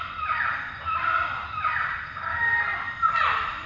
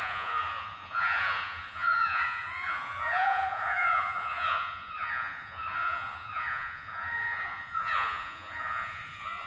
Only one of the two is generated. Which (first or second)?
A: second